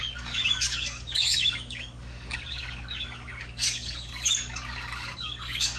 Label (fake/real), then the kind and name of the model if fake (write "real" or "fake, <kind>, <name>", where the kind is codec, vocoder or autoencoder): fake, codec, DAC